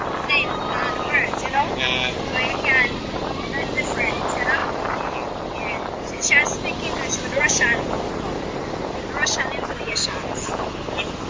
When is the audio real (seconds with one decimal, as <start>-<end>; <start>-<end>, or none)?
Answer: 0.0-11.3

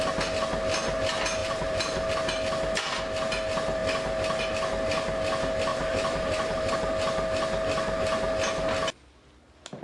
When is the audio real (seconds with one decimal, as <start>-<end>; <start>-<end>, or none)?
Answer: 0.0-1.4; 2.1-5.7; 6.7-9.8

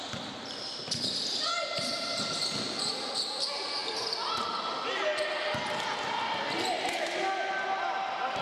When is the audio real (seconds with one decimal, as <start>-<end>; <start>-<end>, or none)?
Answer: 0.0-8.4

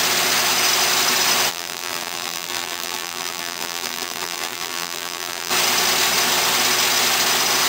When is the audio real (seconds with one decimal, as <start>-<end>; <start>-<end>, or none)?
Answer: 0.0-1.5; 5.5-7.7

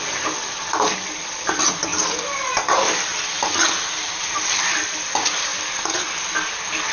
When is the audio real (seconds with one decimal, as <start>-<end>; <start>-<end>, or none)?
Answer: 1.9-4.2; 5.5-6.5

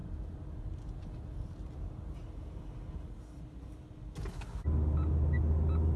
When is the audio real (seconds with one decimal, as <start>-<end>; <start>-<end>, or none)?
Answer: 3.2-6.0

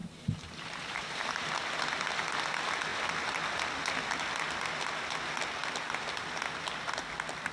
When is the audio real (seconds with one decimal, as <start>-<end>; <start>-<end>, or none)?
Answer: 1.5-7.5